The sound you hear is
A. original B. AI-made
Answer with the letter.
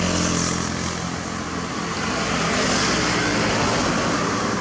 A